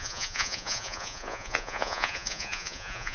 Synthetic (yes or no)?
yes